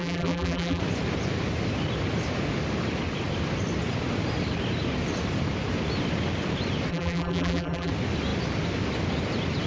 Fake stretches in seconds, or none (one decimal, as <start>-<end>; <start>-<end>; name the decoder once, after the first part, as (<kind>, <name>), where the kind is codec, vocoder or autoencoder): 0.0-0.8 (vocoder, BigVGAN v2); 6.9-7.9